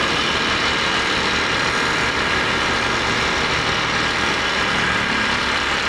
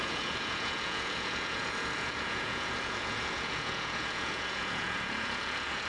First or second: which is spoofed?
second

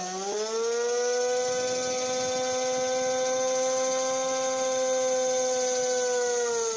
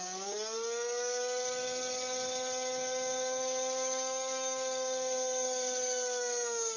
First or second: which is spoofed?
second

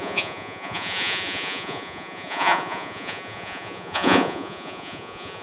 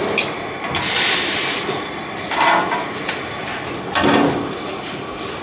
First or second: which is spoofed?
first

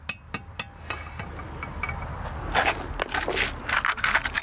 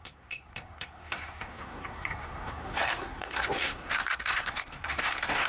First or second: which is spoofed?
second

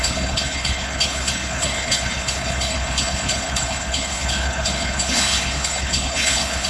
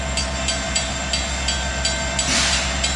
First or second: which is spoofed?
first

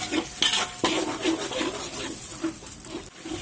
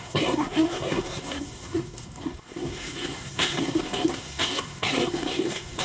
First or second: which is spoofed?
second